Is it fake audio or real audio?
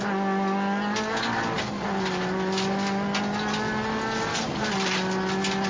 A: real